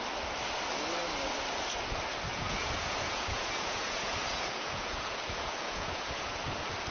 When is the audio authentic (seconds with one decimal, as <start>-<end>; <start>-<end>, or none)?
0.0-2.3; 6.4-6.9